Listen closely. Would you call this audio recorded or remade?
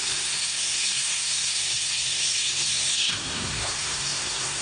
remade